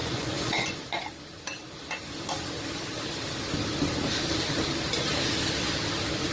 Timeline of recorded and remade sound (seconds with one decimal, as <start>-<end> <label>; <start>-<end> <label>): 0.0-1.0 remade; 1.0-6.3 recorded